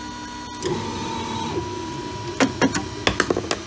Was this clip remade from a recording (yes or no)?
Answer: no